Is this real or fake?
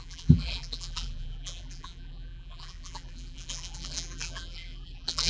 fake